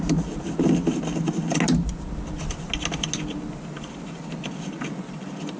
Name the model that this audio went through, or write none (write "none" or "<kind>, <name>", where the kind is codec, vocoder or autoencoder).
none